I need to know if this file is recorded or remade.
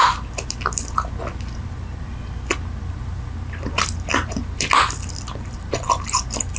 recorded